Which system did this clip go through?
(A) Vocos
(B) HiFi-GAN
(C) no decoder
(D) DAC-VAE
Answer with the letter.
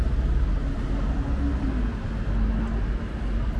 C